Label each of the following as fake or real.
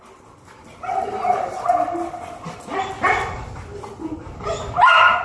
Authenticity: real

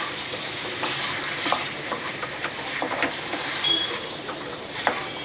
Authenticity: fake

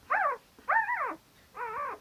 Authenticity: real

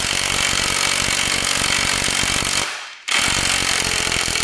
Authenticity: real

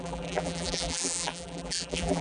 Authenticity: fake